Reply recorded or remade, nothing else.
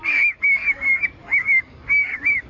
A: remade